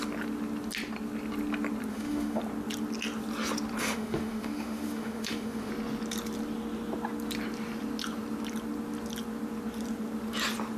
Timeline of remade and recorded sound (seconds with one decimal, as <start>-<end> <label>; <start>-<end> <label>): 0.0-1.9 recorded; 1.9-2.4 remade; 2.4-3.8 recorded; 3.8-5.7 remade; 5.7-10.8 recorded